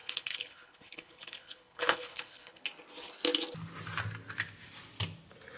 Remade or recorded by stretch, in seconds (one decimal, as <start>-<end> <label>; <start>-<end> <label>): 0.0-2.6 remade; 2.6-5.6 recorded